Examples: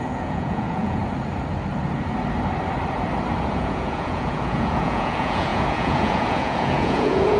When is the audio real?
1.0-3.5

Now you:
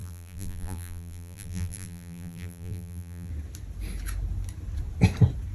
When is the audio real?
3.3-5.5

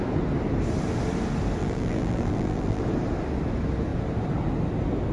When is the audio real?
0.0-1.6; 2.8-5.1

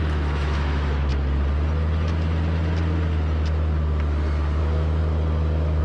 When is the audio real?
1.1-4.6; 5.0-5.8

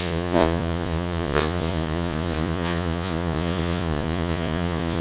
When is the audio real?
none

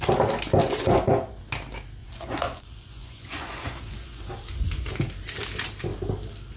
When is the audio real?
0.0-0.6; 1.4-2.0; 4.2-6.6